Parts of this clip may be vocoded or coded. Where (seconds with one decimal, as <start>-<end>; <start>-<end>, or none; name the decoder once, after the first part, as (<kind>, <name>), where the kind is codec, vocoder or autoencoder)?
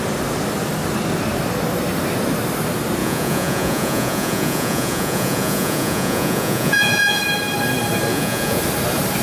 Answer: 3.0-7.2 (vocoder, Vocos); 8.1-8.6